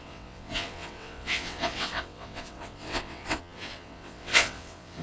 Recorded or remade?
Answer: remade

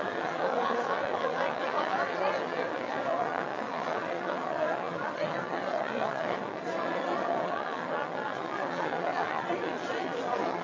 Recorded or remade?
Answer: remade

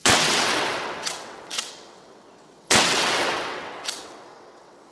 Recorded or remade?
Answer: remade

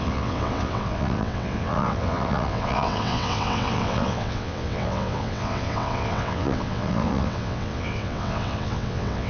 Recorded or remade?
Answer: remade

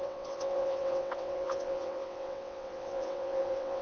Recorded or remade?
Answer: remade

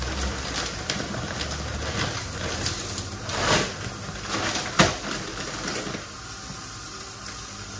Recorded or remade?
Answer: recorded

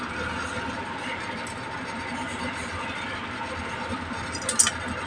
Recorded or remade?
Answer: recorded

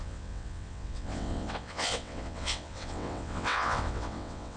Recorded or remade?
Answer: remade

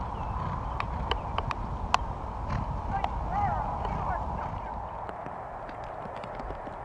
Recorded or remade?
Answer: recorded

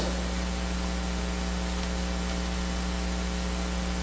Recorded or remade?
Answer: recorded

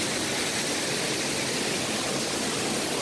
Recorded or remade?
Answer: recorded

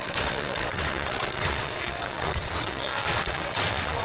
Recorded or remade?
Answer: remade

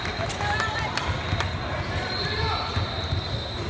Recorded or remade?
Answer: recorded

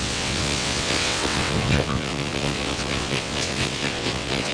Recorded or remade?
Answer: remade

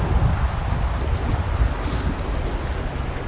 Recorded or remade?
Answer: recorded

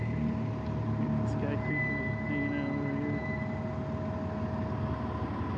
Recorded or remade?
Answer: recorded